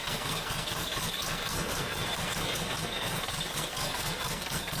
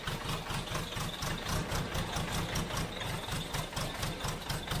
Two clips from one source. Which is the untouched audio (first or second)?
second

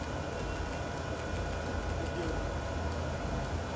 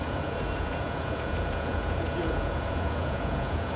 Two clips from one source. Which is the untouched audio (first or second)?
first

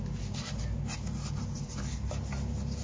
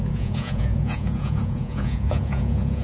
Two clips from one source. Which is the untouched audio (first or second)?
first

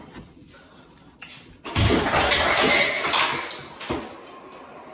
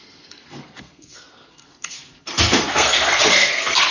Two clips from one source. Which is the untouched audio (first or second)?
first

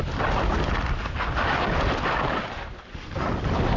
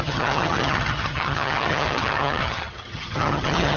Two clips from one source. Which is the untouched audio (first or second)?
first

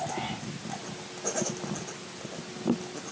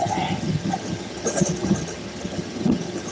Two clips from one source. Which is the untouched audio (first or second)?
first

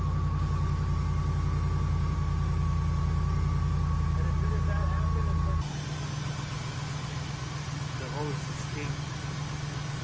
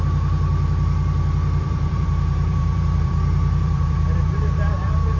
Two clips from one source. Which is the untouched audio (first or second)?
first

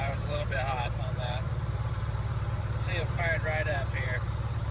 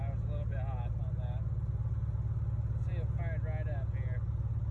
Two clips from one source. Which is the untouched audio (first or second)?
second